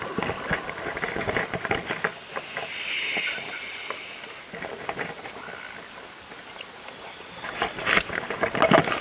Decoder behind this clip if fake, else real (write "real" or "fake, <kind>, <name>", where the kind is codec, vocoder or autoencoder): real